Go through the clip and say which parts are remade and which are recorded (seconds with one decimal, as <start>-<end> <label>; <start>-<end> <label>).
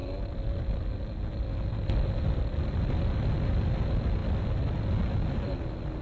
0.0-6.0 recorded